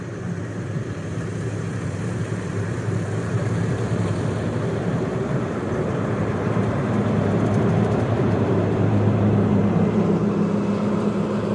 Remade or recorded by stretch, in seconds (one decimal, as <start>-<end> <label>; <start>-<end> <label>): 0.0-10.2 remade; 10.2-10.7 recorded; 10.7-11.5 remade